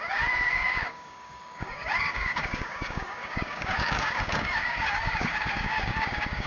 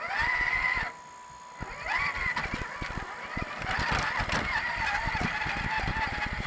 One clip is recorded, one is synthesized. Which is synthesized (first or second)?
first